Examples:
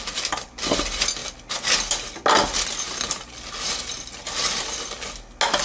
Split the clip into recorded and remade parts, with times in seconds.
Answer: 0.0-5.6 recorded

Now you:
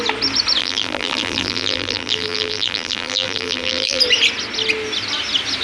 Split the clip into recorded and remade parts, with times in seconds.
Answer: 0.0-0.6 recorded; 0.6-4.0 remade; 4.0-5.6 recorded

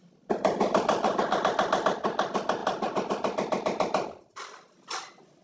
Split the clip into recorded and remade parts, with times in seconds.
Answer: 0.0-5.4 remade

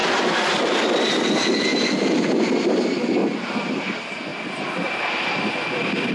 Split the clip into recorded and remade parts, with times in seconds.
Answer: 0.0-0.5 remade; 0.5-3.2 recorded; 3.2-3.7 remade; 3.7-6.1 recorded

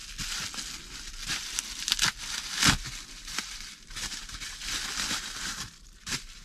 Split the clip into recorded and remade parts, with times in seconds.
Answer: 0.0-3.1 recorded; 3.1-4.6 remade; 4.6-5.2 recorded; 5.2-6.4 remade

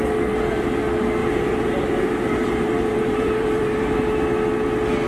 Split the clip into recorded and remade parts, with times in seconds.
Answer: 0.0-1.2 recorded; 1.2-4.3 remade; 4.3-5.1 recorded

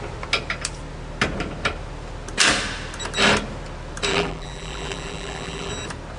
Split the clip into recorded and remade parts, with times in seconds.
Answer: 0.0-4.1 recorded; 4.1-5.7 remade; 5.7-6.2 recorded

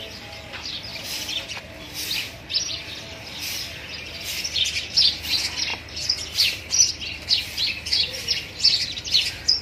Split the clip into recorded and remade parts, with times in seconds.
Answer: 0.0-9.6 recorded